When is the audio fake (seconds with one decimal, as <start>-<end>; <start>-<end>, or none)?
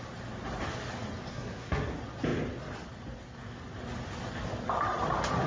1.3-1.9